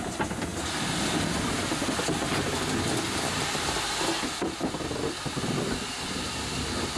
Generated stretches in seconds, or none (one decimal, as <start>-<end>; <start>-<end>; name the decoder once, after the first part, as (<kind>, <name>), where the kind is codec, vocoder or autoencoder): none